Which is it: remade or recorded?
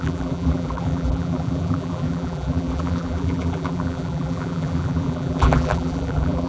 remade